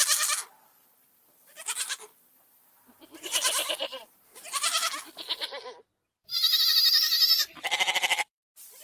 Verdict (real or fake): fake